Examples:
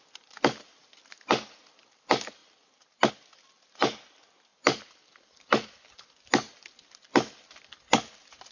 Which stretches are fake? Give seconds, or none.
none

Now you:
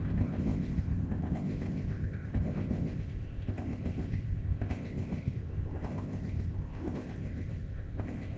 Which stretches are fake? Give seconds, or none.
0.0-8.4 (codec, ZipCodec)

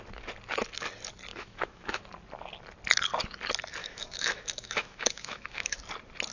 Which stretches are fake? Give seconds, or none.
1.3-2.0 (autoencoder, DAC-VAE); 3.8-5.8

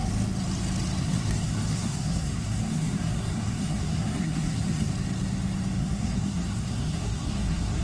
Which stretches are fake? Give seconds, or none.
1.0-4.9 (codec, SNAC); 5.8-7.8

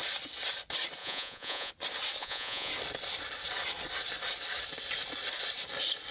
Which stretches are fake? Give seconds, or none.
1.0-1.7 (vocoder, Vocos); 2.2-2.7

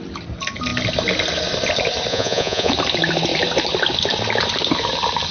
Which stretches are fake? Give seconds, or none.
2.1-2.7 (vocoder, Vocos)

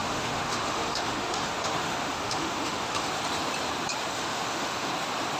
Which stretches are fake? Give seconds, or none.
0.0-3.1 (autoencoder, DAC-VAE); 4.1-4.9